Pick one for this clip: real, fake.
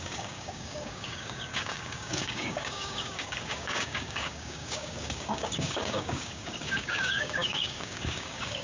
fake